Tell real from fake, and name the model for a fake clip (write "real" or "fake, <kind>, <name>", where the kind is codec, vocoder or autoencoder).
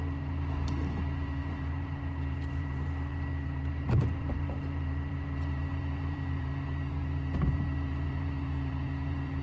fake, vocoder, BigVGAN v2